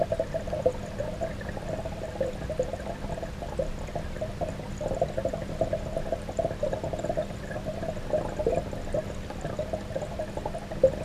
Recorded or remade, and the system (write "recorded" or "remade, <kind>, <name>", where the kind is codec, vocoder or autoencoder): recorded